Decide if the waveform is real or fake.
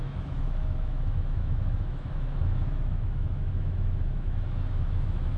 fake